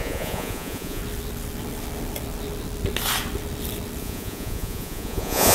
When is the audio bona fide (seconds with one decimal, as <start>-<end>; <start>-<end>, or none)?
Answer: 1.0-4.0